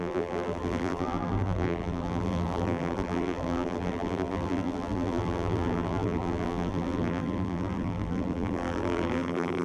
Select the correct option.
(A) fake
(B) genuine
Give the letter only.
A